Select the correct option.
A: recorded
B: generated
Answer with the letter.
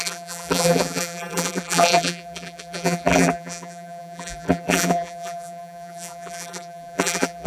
B